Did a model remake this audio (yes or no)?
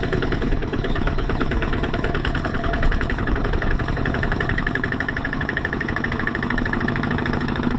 yes